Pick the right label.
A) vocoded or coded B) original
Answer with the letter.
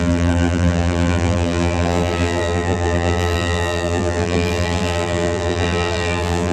A